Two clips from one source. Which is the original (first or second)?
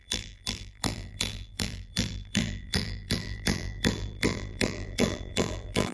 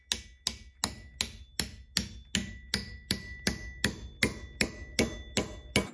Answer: second